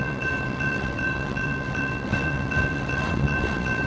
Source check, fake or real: fake